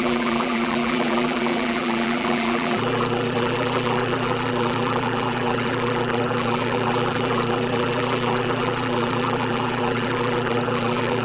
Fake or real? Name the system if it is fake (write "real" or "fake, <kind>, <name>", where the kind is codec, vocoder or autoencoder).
fake, vocoder, BigVGAN v2